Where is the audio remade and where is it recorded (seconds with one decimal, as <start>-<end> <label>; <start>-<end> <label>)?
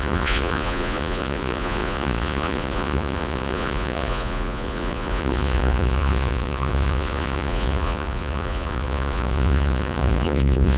0.0-10.8 remade